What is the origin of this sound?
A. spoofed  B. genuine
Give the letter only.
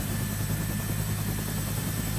B